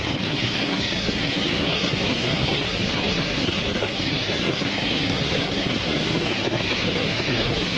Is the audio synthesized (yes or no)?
yes